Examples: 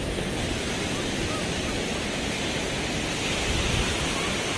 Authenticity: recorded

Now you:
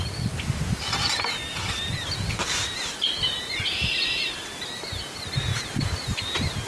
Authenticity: recorded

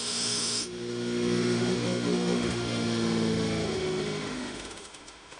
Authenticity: remade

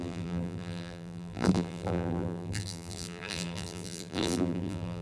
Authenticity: remade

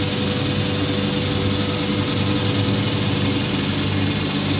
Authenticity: recorded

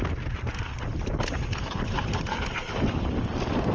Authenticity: recorded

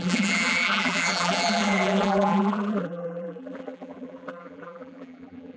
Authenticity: remade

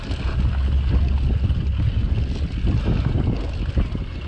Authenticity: recorded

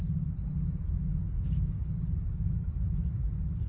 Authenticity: recorded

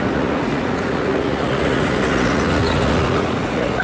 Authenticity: remade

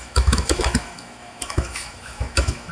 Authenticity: remade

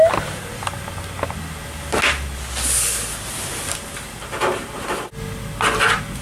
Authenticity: recorded